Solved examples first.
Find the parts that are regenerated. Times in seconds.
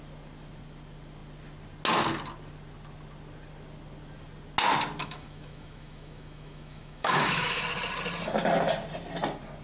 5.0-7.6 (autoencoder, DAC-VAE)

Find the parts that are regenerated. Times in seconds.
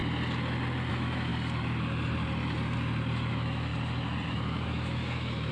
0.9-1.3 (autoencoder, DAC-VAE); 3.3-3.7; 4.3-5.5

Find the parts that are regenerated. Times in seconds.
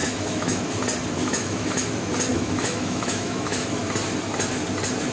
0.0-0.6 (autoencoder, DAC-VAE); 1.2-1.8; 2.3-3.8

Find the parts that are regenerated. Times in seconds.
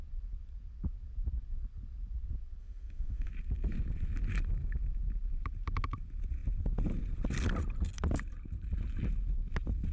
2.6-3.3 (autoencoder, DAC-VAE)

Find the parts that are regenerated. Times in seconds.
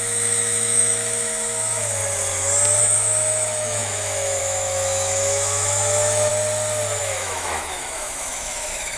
0.0-2.0 (autoencoder, DAC-VAE); 2.8-6.3; 7.0-9.0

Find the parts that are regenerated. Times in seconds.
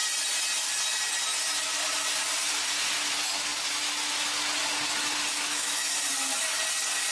5.3-5.9 (autoencoder, DAC-VAE)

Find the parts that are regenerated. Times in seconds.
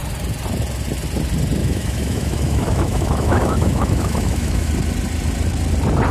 1.6-4.7 (autoencoder, DAC-VAE)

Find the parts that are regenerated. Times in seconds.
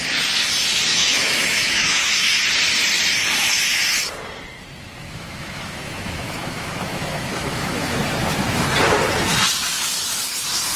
0.9-2.4 (autoencoder, DAC-VAE); 5.0-8.0